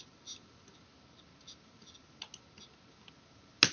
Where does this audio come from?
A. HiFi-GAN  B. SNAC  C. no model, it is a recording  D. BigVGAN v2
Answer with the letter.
C